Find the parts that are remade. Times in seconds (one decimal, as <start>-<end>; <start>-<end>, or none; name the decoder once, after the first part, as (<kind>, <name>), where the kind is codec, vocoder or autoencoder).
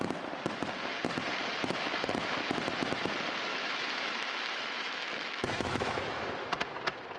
3.5-6.5 (autoencoder, DAC-VAE)